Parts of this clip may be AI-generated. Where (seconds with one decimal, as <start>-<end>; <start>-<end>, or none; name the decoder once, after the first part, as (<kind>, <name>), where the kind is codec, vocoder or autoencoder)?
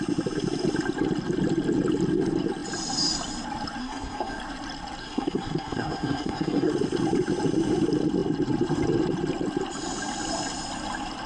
3.8-4.4 (codec, SNAC); 5.0-6.7